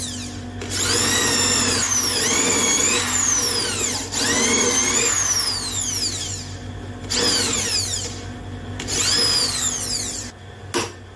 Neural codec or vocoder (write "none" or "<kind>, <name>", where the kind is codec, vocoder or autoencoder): none